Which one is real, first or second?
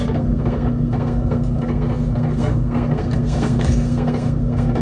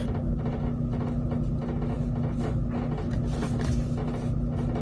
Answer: second